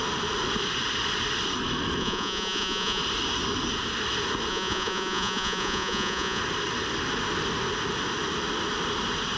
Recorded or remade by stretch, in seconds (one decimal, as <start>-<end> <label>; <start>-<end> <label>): 0.0-2.0 recorded; 2.0-3.0 remade; 3.0-4.5 recorded; 4.5-6.4 remade; 6.4-9.4 recorded